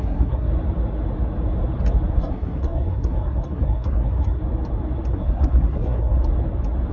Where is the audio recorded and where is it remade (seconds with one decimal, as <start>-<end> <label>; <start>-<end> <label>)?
0.0-0.5 remade; 0.5-2.2 recorded; 2.2-4.4 remade; 4.4-5.1 recorded; 5.1-6.2 remade; 6.2-6.9 recorded